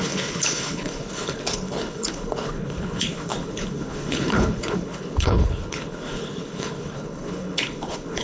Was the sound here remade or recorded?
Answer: remade